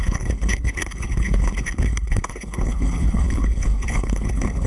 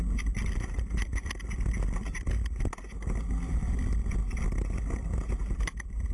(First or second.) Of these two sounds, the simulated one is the first